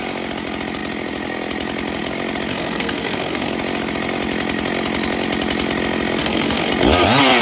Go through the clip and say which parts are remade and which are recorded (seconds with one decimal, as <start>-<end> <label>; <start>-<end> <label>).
0.0-2.5 recorded; 2.5-3.5 remade; 3.5-6.2 recorded; 6.2-6.7 remade; 6.7-7.4 recorded